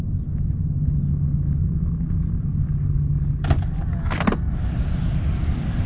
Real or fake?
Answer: real